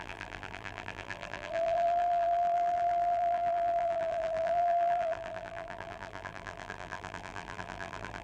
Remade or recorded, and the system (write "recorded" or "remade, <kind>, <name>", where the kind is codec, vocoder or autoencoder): remade, vocoder, BigVGAN v2